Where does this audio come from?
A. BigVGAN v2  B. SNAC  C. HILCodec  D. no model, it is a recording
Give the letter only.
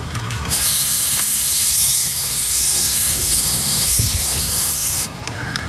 B